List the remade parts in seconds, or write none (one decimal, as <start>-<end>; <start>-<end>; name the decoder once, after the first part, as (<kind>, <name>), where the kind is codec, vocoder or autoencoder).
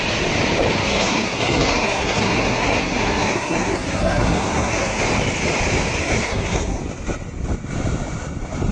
0.8-5.0 (codec, SNAC); 6.0-6.8